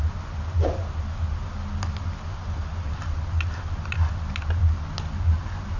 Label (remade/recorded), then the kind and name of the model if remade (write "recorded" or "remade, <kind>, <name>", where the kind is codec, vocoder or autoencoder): recorded